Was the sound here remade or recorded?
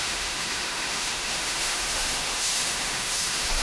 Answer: remade